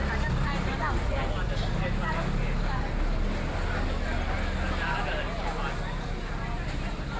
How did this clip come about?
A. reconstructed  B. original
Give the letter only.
B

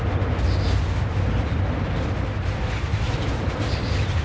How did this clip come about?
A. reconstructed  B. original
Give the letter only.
B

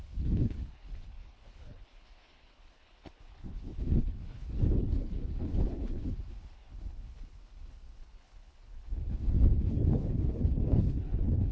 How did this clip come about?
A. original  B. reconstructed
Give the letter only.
B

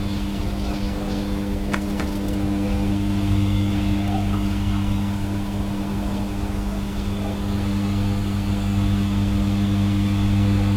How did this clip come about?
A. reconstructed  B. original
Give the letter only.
A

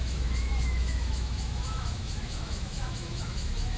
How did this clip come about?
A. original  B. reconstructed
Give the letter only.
B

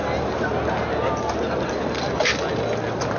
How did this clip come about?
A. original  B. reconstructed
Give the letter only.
A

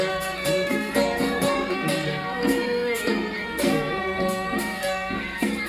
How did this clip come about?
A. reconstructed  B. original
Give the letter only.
A